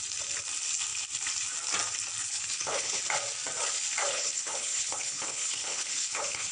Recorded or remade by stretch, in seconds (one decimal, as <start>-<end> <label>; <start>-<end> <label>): 0.0-2.3 recorded; 2.3-3.0 remade; 3.0-4.1 recorded; 4.1-6.5 remade